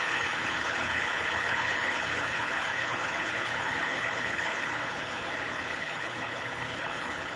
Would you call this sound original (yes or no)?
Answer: no